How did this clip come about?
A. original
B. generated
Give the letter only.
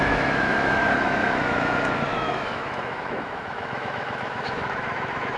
B